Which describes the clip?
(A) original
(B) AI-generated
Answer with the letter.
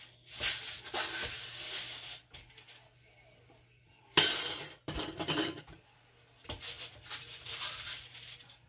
A